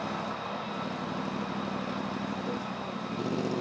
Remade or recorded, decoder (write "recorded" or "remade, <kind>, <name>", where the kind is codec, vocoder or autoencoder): recorded